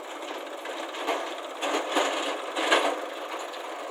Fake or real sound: real